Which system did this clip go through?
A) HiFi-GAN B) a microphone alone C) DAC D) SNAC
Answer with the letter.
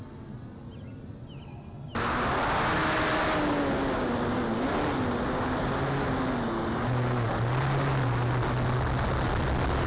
B